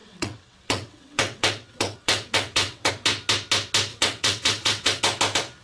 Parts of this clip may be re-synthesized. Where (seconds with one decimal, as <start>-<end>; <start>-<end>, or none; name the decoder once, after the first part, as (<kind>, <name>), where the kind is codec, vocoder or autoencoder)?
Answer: 0.0-2.9 (vocoder, WaveNeXt); 3.9-5.0